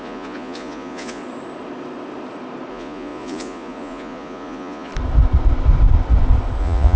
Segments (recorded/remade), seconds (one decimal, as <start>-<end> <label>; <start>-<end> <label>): 0.0-1.2 remade; 1.2-2.7 recorded; 2.7-4.9 remade; 4.9-6.6 recorded; 6.6-7.0 remade